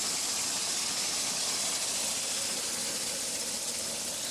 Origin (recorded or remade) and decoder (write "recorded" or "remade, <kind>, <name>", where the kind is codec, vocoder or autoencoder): recorded